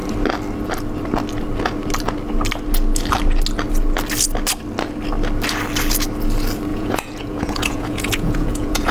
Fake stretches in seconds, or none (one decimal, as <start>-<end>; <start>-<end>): 6.7-8.9